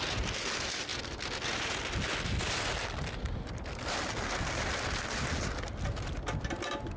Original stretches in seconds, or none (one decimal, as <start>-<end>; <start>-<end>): 0.0-7.0